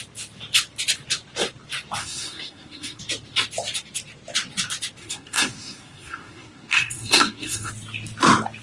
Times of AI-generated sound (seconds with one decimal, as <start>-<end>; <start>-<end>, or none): 2.0-3.0; 5.0-7.7